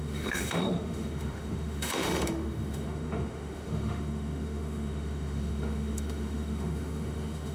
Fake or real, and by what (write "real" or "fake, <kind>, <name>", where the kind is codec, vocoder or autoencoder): fake, autoencoder, DAC-VAE